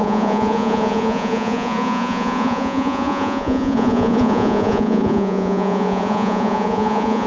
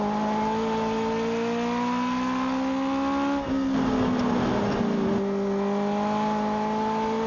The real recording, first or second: second